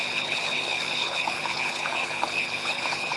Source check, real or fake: fake